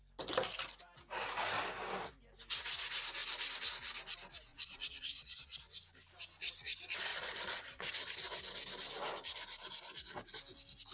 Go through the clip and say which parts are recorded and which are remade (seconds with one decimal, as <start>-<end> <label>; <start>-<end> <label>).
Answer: 0.0-4.5 recorded; 4.5-5.6 remade; 5.6-7.1 recorded; 7.1-7.9 remade; 7.9-10.9 recorded